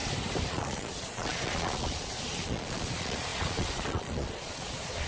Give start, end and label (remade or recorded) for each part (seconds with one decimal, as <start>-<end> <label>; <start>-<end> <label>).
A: 0.0-0.5 recorded; 0.5-5.1 remade